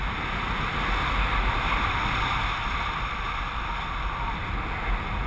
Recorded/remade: remade